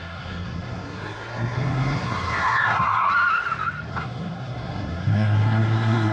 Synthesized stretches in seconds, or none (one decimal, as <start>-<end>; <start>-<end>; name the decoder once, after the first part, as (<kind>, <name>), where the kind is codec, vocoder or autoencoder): 0.0-3.1 (codec, SNAC); 3.9-6.1